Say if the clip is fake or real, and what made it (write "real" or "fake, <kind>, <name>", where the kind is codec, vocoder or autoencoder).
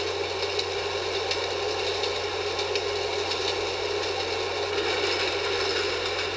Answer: real